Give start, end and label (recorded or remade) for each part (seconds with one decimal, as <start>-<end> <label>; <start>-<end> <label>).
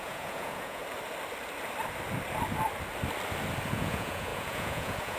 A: 0.0-0.8 remade; 0.8-3.7 recorded; 3.7-5.2 remade